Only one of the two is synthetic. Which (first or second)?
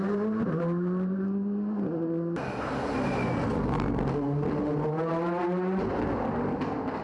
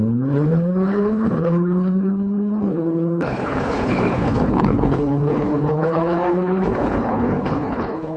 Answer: second